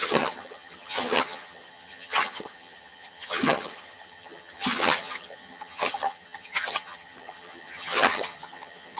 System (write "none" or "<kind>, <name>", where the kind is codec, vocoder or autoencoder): vocoder, HiFi-GAN